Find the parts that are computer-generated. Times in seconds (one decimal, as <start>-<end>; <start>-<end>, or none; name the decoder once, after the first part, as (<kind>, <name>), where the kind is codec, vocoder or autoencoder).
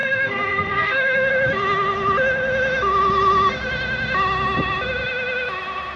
0.0-1.3 (codec, SNAC)